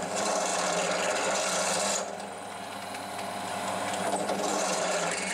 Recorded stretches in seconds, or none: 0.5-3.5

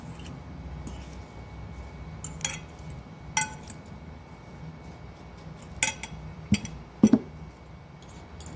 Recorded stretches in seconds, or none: 0.0-8.6

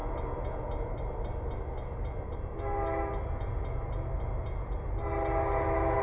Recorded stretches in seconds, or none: 0.0-6.0

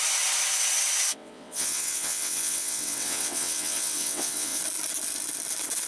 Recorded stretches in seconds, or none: 0.0-1.1; 4.6-5.9

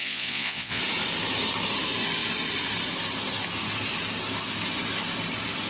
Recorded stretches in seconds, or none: 0.8-5.7

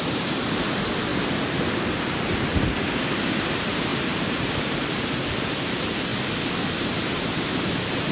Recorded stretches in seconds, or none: 1.1-1.7; 2.5-3.5; 6.1-6.7

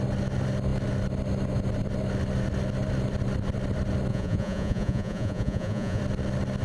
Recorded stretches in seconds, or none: 0.0-4.1; 6.0-6.6